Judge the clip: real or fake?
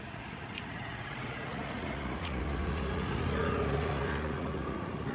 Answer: fake